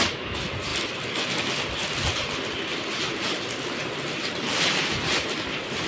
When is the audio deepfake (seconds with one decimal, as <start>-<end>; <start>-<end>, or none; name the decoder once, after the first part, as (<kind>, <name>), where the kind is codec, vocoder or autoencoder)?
none